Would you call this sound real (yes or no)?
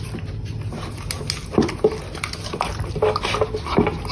yes